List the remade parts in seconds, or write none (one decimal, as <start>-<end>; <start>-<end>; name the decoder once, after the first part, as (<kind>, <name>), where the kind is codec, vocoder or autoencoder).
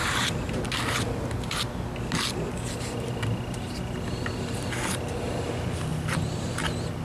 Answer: 0.0-0.6 (vocoder, BigVGAN v2)